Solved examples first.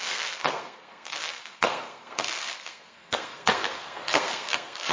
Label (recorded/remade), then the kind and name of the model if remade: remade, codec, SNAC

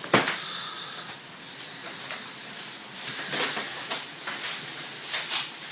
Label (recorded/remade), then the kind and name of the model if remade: recorded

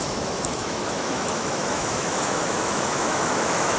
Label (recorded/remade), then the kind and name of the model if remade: remade, autoencoder, DAC-VAE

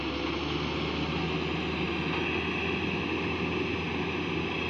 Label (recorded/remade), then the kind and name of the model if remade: recorded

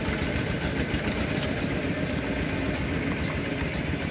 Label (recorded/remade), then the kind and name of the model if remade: recorded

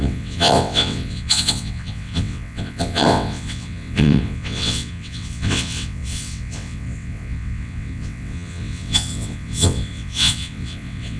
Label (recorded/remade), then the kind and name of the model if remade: remade, vocoder, WaveNeXt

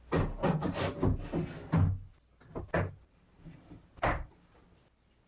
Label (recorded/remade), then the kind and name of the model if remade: recorded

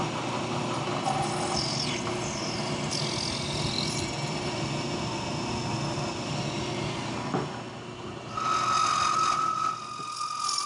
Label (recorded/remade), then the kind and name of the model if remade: recorded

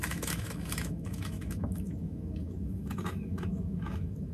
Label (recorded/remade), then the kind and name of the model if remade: remade, autoencoder, DAC-VAE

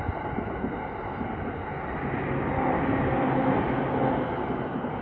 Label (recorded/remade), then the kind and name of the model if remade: recorded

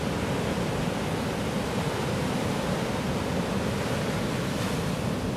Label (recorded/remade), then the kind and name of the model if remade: recorded